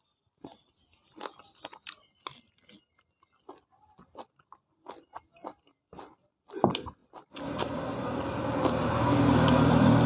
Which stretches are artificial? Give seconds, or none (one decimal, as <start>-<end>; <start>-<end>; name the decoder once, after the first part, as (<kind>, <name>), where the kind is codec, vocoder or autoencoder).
none